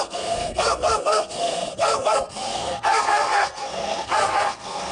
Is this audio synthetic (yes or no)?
yes